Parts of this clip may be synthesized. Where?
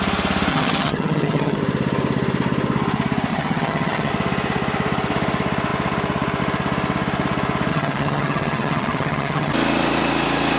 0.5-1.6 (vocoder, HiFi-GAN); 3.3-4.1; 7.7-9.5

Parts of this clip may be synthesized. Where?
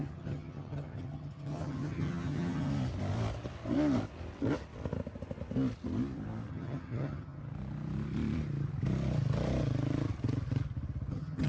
0.0-2.7 (vocoder, HiFi-GAN); 6.5-7.4; 11.1-11.5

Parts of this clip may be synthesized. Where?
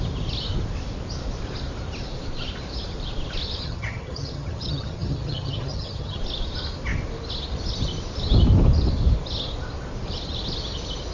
3.6-6.2 (vocoder, HiFi-GAN)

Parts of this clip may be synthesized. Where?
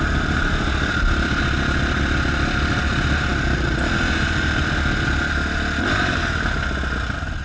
none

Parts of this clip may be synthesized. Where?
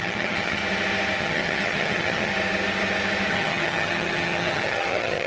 0.0-0.6 (vocoder, HiFi-GAN); 1.2-2.3; 3.3-5.3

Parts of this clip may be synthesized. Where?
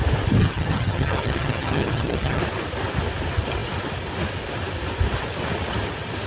0.4-2.4 (vocoder, HiFi-GAN)